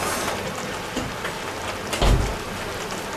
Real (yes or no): yes